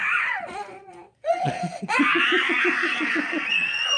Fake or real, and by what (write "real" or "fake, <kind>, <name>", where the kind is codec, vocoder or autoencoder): fake, vocoder, Vocos